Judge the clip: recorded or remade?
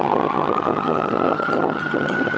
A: remade